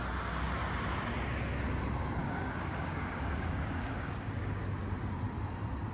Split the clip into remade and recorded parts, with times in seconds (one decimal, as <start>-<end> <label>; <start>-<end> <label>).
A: 0.0-2.2 recorded; 2.2-4.6 remade; 4.6-5.9 recorded